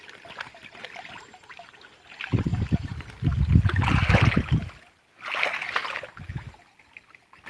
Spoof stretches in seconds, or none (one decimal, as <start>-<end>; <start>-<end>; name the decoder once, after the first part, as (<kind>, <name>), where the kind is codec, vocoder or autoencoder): 2.5-3.0 (vocoder, BigVGAN v2)